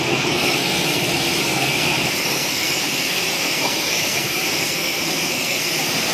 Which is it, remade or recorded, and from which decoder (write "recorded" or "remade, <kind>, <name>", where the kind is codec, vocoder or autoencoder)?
remade, codec, SNAC